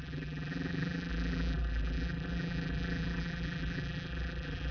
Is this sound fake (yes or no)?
yes